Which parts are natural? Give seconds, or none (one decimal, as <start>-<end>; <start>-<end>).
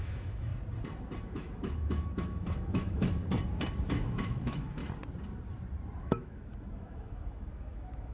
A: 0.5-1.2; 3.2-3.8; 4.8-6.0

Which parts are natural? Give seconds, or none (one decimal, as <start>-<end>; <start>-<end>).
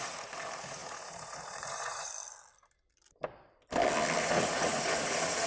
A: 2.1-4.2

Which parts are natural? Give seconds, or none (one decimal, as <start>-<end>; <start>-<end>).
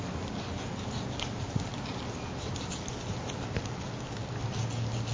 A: 0.0-5.1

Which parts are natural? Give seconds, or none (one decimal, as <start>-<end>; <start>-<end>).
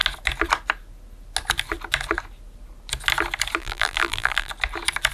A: 0.0-3.6; 4.5-5.1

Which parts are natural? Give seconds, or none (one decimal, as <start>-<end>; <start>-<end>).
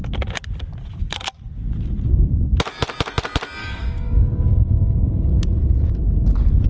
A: 0.0-3.6; 5.3-6.7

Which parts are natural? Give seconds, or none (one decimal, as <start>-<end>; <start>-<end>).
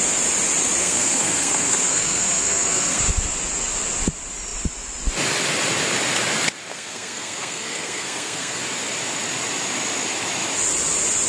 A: 0.0-0.8; 3.0-6.7; 8.6-11.3